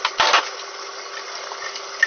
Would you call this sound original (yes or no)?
yes